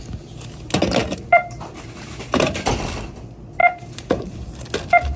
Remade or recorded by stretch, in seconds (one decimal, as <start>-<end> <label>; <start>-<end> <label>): 0.0-1.0 recorded; 1.0-2.7 remade; 2.7-3.6 recorded; 3.6-4.6 remade; 4.6-5.2 recorded